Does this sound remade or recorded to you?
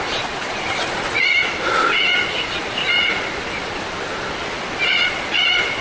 remade